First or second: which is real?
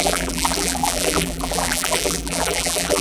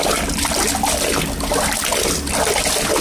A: second